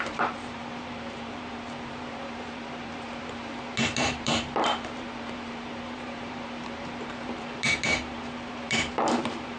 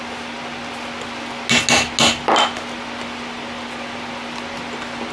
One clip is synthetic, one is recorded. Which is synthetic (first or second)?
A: first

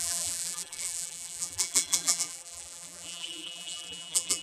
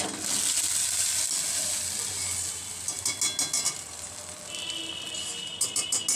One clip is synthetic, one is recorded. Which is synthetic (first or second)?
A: first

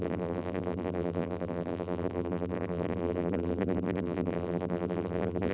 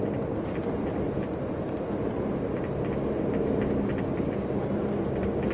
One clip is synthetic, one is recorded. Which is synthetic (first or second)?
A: first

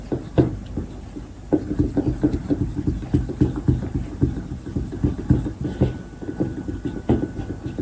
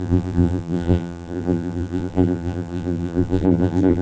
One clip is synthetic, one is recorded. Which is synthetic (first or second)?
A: second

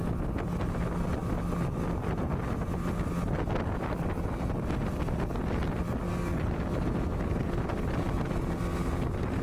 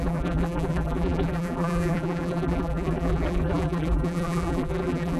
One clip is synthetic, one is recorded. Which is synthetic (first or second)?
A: second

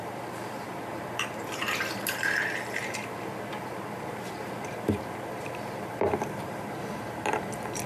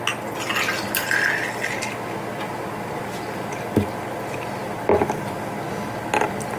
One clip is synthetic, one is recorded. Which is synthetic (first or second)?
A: first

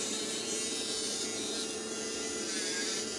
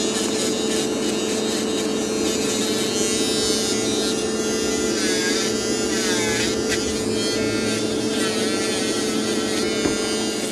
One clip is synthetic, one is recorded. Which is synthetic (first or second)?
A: first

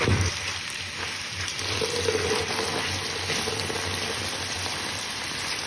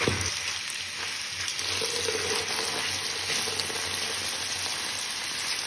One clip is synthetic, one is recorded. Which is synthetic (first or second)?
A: first